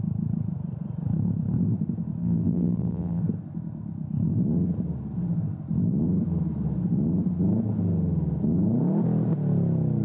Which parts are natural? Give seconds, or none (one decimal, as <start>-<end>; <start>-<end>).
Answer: 0.0-2.2; 3.2-10.0